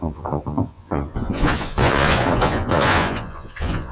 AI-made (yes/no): yes